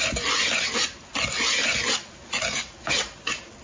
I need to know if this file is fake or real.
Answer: real